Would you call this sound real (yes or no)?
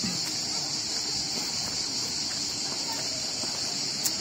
yes